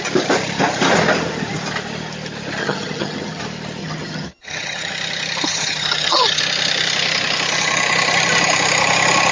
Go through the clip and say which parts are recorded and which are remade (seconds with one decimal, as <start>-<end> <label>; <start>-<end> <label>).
0.0-2.6 recorded; 2.6-3.4 remade; 3.4-3.8 recorded; 3.8-4.9 remade; 4.9-5.5 recorded; 5.5-6.4 remade; 6.4-9.3 recorded